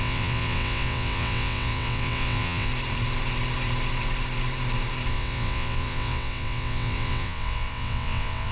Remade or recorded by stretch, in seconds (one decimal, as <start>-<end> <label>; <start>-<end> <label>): 0.0-2.7 remade; 2.7-5.1 recorded; 5.1-8.5 remade